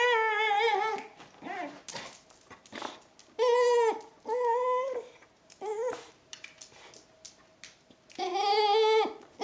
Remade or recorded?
recorded